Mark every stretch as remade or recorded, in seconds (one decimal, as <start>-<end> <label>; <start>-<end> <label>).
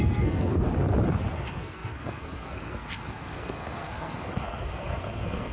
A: 0.0-0.7 remade; 0.7-1.3 recorded; 1.3-5.5 remade